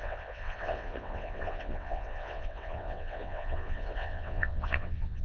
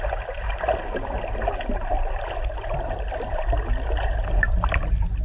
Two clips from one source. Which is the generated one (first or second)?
first